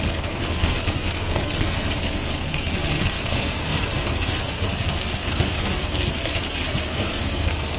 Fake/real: fake